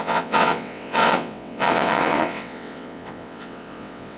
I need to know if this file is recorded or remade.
remade